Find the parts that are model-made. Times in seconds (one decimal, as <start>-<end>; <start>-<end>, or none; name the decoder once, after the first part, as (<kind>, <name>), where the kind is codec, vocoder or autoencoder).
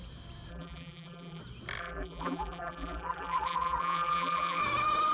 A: 0.5-1.4 (vocoder, BigVGAN v2); 1.8-4.6